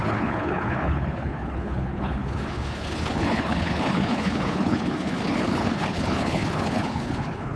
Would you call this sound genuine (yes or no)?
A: no